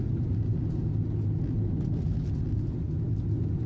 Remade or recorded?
recorded